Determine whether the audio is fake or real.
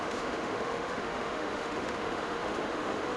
fake